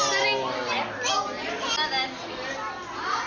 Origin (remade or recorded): recorded